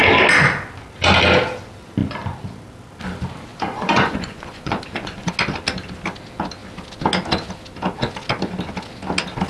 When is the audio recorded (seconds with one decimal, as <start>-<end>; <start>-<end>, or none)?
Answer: 0.0-3.5; 5.3-9.5